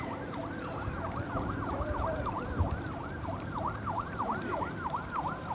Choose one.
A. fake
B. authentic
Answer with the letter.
A